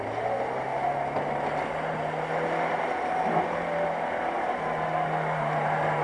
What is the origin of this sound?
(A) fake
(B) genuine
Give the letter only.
B